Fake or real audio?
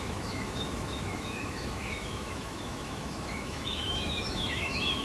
fake